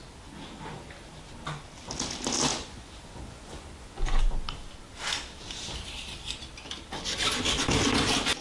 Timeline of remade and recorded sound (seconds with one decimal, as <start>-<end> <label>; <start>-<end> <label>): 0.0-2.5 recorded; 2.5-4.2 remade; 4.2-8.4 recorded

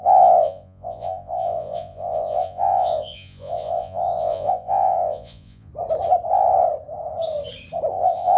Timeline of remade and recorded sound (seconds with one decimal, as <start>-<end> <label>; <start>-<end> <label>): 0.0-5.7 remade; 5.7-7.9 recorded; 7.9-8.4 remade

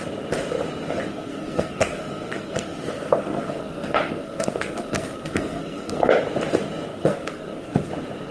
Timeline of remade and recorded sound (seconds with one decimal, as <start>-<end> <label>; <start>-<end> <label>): 0.0-1.1 recorded; 1.1-6.1 remade; 6.1-6.9 recorded; 6.9-7.9 remade; 7.9-8.3 recorded

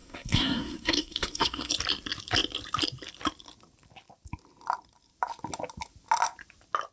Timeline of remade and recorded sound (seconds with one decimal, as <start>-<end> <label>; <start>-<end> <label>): 0.0-1.7 remade; 1.7-6.9 recorded

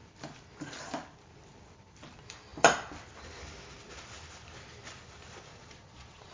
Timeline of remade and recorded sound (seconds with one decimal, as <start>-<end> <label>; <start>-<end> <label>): 0.0-5.5 recorded; 5.5-6.3 remade

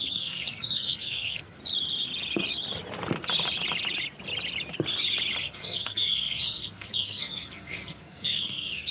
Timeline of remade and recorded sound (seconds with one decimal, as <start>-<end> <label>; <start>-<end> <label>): 0.0-1.6 remade; 1.6-5.4 recorded; 5.4-8.9 remade

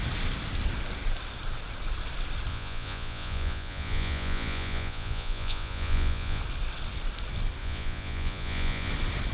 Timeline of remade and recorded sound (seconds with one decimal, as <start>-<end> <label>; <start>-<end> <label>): 0.0-2.5 recorded; 2.5-6.4 remade; 6.4-7.6 recorded; 7.6-8.9 remade; 8.9-9.3 recorded

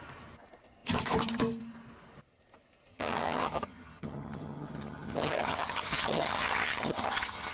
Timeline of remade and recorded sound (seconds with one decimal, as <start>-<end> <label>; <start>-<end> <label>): 0.0-2.9 recorded; 2.9-7.5 remade